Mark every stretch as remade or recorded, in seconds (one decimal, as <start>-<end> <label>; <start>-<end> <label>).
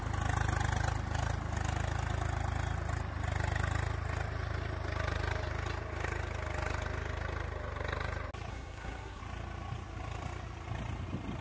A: 0.0-8.5 recorded; 8.5-9.2 remade; 9.2-11.4 recorded